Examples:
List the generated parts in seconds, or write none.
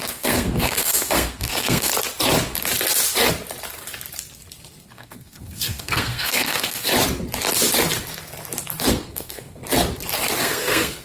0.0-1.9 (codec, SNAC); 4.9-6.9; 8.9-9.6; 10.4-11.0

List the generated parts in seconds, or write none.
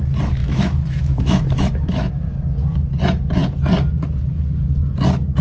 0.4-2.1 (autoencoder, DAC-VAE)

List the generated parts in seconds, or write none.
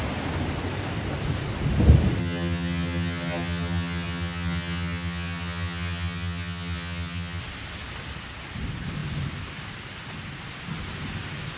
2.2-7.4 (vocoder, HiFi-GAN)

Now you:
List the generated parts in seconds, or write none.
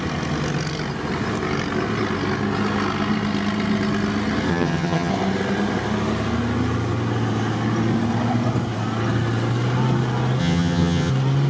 4.5-5.1 (vocoder, HiFi-GAN); 10.4-11.1